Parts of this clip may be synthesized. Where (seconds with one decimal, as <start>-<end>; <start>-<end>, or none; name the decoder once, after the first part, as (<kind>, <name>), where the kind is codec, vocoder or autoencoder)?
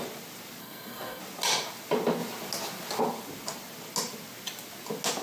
0.6-1.2 (codec, SNAC)